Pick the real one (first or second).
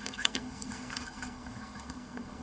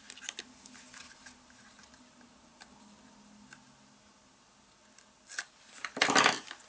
second